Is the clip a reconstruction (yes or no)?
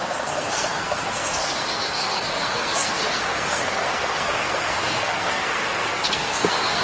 yes